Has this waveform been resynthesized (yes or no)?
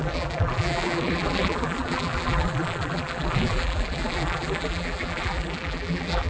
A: yes